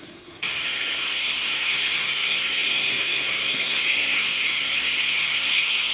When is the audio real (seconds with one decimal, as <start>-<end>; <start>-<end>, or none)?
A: none